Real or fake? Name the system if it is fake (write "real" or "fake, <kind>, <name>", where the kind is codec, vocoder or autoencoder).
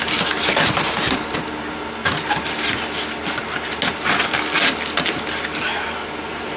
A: real